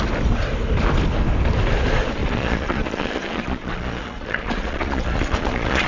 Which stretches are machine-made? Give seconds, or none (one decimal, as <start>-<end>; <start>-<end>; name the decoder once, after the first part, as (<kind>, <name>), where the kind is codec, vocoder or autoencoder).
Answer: 2.2-5.9 (vocoder, Vocos)